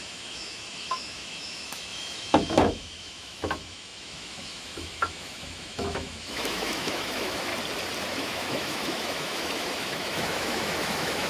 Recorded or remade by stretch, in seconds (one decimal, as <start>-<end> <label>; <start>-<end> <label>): 0.0-7.5 remade; 7.5-8.0 recorded; 8.0-11.3 remade